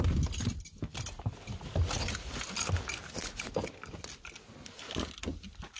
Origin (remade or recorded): recorded